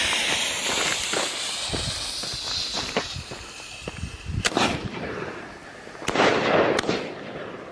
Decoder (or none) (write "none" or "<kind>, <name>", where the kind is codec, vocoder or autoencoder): none